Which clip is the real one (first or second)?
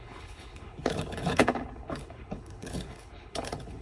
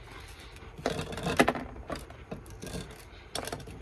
second